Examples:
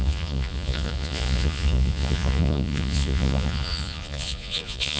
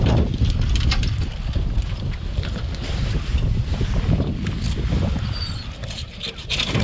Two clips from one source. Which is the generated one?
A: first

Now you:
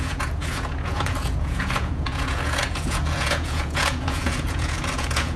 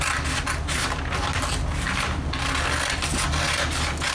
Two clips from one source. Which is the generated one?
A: first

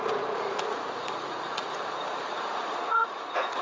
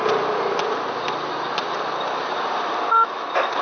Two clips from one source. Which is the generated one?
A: first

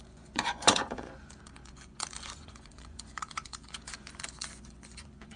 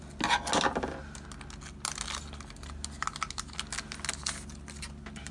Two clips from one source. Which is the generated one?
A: first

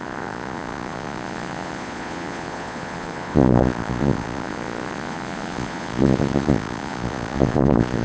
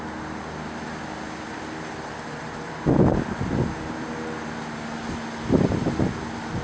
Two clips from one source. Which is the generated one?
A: first